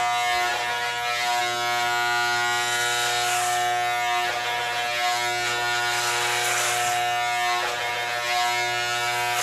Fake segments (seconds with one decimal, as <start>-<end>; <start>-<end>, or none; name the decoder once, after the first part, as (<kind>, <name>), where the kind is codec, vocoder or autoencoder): none